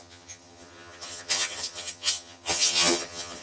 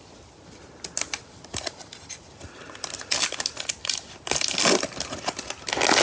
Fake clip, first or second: first